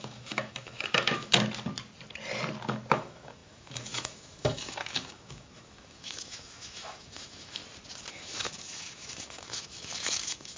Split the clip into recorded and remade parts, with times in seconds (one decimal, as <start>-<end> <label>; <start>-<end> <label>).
0.0-1.3 remade; 1.3-2.9 recorded; 2.9-7.6 remade; 7.6-8.1 recorded; 8.1-10.6 remade